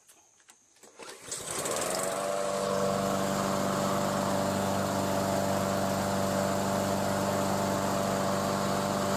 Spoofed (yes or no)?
no